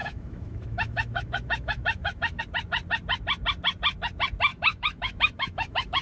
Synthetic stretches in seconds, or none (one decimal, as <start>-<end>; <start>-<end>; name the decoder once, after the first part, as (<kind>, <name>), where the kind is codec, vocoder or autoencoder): 0.0-2.4 (autoencoder, DAC-VAE); 4.5-6.0